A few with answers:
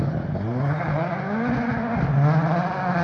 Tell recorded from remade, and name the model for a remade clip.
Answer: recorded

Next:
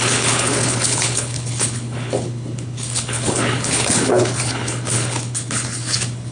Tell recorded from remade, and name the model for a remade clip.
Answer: remade, codec, HILCodec